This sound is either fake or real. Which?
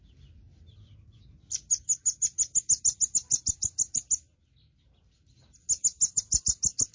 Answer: real